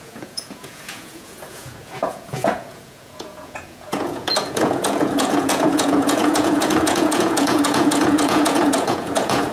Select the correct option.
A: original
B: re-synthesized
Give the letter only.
B